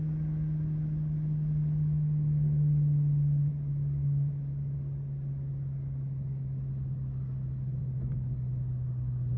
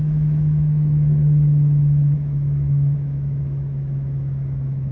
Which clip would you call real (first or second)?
first